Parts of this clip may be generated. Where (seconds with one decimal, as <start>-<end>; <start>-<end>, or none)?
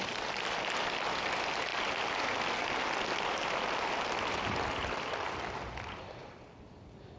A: 0.0-1.7; 6.0-7.2